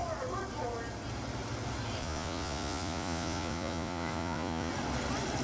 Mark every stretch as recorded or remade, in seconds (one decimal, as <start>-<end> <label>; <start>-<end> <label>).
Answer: 0.0-2.0 recorded; 2.0-4.7 remade; 4.7-5.4 recorded